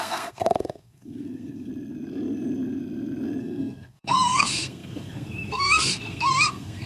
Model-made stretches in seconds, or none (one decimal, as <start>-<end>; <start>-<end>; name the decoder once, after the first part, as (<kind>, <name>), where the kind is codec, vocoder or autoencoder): 0.0-1.7 (codec, SNAC); 3.4-6.9